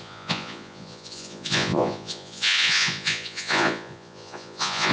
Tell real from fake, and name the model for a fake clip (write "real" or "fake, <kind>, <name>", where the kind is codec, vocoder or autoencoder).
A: fake, vocoder, Vocos